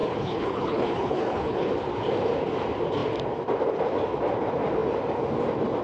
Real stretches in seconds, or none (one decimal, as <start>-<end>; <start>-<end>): 1.7-5.8